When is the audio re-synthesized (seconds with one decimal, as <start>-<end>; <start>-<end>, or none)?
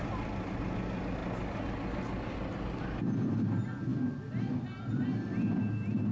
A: none